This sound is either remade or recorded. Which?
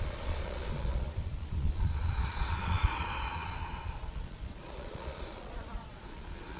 remade